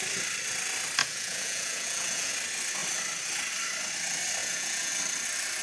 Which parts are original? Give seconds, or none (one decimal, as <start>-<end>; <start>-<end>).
0.0-1.0; 2.3-4.4; 4.9-5.6